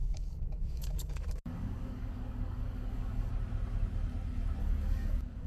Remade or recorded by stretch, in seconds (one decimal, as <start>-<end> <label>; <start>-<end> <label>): 0.0-3.3 remade; 3.3-4.6 recorded; 4.6-5.5 remade